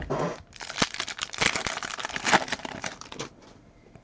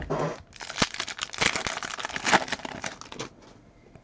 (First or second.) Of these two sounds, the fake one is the first